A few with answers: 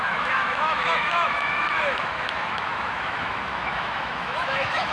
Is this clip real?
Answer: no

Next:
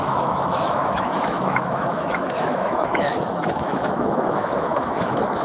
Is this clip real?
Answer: no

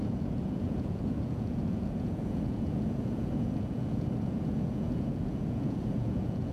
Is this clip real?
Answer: no